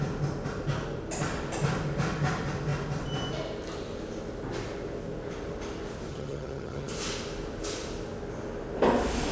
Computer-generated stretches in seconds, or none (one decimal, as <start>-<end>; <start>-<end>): 6.1-6.9